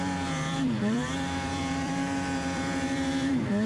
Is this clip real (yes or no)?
no